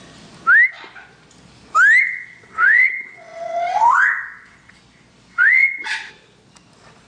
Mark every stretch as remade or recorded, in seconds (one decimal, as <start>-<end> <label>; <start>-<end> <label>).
0.0-2.0 recorded; 2.0-4.8 remade; 4.8-5.3 recorded; 5.3-6.1 remade; 6.1-7.1 recorded